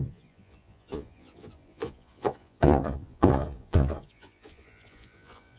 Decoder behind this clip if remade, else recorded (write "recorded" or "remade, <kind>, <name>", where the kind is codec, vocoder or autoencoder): remade, vocoder, Vocos